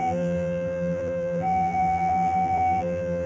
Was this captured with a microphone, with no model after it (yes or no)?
no